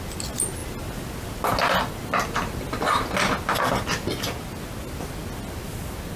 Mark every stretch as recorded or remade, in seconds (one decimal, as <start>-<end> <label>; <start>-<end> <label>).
0.0-6.2 recorded